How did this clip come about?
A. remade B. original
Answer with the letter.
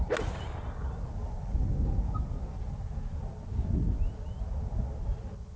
B